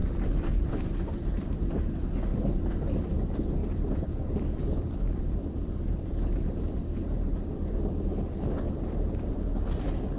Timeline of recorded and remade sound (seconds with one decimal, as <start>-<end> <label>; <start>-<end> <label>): 0.0-2.3 remade; 2.3-2.9 recorded; 2.9-7.3 remade; 7.3-9.3 recorded; 9.3-10.2 remade